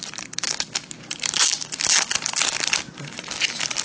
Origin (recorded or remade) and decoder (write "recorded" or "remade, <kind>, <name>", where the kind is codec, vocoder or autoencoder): recorded